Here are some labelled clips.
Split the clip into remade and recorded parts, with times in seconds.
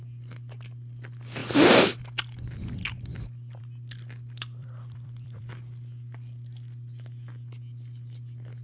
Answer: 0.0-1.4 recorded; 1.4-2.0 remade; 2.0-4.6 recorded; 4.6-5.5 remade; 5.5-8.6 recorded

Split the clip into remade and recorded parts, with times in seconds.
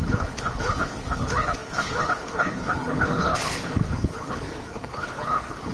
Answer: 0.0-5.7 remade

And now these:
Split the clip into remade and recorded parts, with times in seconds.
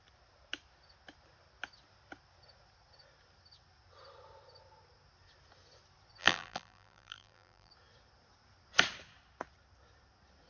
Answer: 0.0-6.2 recorded; 6.2-7.7 remade; 7.7-10.5 recorded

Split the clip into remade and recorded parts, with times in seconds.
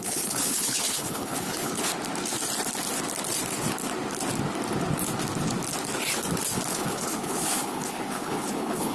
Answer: 0.0-1.9 remade; 1.9-6.7 recorded; 6.7-8.9 remade